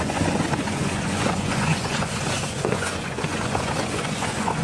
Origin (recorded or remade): remade